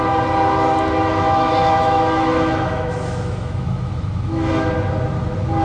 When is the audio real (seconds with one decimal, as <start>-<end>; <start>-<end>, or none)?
0.0-1.1; 4.5-5.6